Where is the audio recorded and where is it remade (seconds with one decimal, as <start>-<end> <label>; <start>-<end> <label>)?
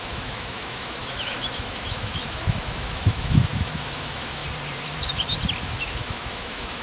0.0-4.4 remade; 4.4-5.6 recorded; 5.6-6.8 remade